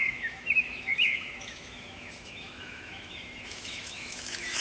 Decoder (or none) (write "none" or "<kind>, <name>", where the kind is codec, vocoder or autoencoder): autoencoder, DAC-VAE